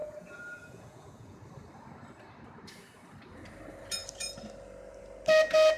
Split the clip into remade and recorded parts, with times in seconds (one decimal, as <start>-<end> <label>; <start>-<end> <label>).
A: 0.0-1.4 remade; 1.4-5.8 recorded